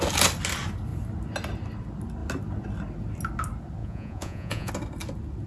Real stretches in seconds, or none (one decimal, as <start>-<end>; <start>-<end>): 0.0-3.8; 4.7-5.5